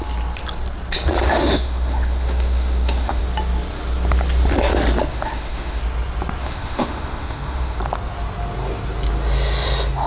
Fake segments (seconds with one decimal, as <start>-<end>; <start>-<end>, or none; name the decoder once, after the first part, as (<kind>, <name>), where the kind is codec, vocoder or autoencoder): 1.3-3.2 (autoencoder, DAC-VAE); 5.1-5.8; 6.4-7.8